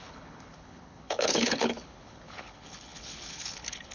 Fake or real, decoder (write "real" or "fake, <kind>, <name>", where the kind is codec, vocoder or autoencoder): fake, codec, HILCodec